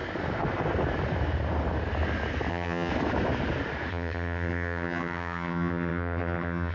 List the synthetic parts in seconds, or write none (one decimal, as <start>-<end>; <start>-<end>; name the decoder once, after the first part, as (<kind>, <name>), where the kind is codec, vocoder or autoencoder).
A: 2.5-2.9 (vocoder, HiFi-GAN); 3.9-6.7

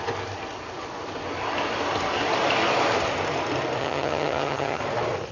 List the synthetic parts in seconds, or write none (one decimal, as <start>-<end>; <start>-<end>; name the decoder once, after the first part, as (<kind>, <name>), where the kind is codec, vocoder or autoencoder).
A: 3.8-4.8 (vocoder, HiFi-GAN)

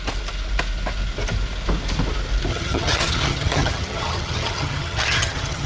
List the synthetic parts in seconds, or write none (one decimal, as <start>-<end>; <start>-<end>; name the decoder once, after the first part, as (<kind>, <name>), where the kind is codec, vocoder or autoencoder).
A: 2.5-5.7 (vocoder, HiFi-GAN)